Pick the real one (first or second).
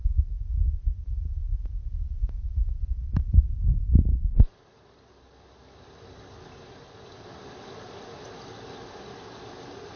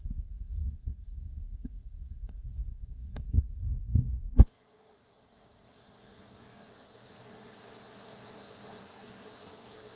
first